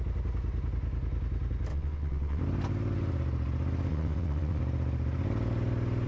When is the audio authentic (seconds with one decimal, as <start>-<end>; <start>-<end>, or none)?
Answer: 0.0-1.7; 2.4-3.9; 4.6-6.1